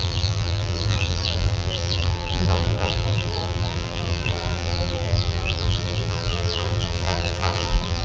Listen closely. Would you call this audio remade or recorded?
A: remade